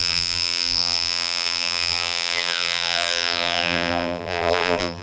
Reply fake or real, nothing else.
fake